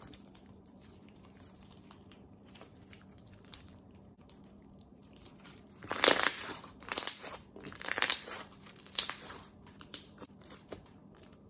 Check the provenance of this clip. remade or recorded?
remade